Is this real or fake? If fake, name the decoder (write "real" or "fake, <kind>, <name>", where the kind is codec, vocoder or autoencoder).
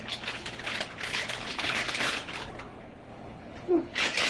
fake, codec, HILCodec